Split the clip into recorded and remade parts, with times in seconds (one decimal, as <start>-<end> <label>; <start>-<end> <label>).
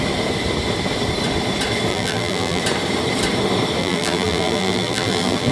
0.0-1.9 recorded; 1.9-2.6 remade; 2.6-3.8 recorded; 3.8-5.5 remade